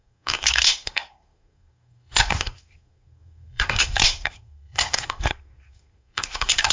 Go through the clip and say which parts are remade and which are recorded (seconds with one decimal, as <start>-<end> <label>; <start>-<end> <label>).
0.0-6.7 remade